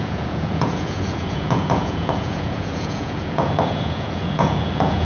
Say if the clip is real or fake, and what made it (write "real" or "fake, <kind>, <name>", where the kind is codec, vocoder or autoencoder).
fake, vocoder, Vocos